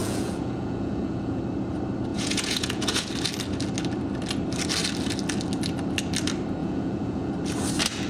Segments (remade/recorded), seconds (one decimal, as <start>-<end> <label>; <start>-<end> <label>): 0.0-1.4 remade; 1.4-2.1 recorded; 2.1-3.1 remade; 3.1-6.6 recorded; 6.6-7.3 remade; 7.3-8.1 recorded